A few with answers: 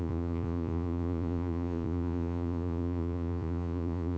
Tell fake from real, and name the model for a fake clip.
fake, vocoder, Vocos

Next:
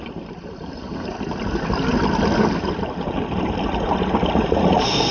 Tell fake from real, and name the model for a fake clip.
real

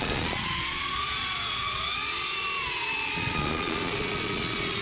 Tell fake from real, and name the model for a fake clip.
fake, vocoder, Vocos